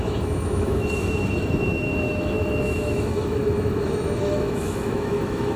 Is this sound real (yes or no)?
no